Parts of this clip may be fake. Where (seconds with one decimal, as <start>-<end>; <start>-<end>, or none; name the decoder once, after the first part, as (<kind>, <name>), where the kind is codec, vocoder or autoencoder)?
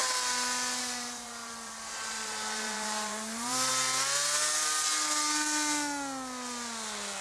0.8-3.7 (vocoder, BigVGAN v2)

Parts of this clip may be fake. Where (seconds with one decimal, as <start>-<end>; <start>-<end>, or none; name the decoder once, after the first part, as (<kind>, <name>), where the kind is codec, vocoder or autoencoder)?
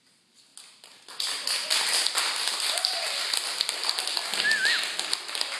0.5-3.9 (vocoder, BigVGAN v2)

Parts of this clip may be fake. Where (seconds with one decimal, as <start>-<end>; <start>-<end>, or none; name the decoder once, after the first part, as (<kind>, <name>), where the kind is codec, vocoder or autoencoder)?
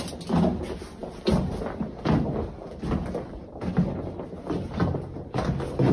none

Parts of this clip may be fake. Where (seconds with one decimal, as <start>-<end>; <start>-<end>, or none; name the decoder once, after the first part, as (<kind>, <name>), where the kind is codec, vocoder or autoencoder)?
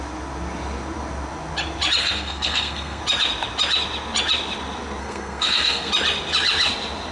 2.0-3.0 (codec, SNAC); 5.0-5.9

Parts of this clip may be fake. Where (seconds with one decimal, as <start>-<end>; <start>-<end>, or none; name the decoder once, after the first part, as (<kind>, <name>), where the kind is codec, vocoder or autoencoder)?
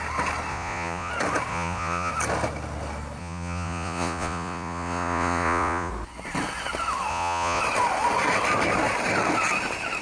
0.5-1.1 (vocoder, Vocos); 1.5-2.1; 3.2-5.9; 7.1-7.6